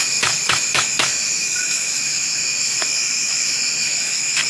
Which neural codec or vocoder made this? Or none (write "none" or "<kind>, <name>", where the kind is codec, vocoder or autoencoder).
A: autoencoder, DAC-VAE